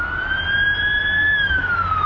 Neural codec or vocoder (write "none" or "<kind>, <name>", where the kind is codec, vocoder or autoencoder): none